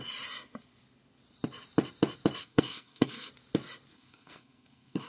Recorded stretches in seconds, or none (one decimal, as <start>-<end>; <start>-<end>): 0.0-2.4; 3.3-3.9